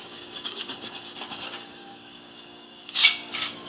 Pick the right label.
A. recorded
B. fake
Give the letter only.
B